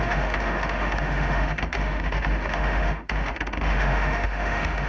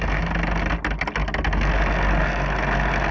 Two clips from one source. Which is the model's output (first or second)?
first